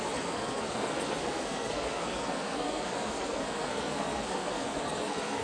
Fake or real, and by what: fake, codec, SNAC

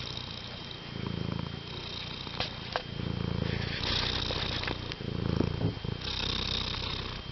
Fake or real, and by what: real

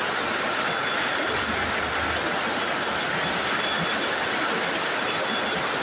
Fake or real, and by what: real